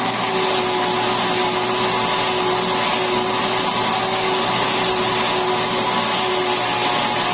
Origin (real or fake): real